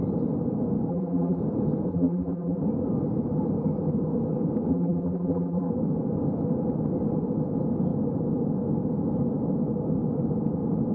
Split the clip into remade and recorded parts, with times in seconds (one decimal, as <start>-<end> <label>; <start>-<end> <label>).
0.0-0.9 recorded; 0.9-1.4 remade; 1.4-1.9 recorded; 1.9-2.6 remade; 2.6-4.7 recorded; 4.7-5.7 remade; 5.7-10.9 recorded